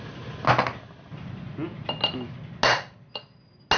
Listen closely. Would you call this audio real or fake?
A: real